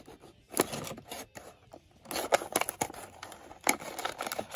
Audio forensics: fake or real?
real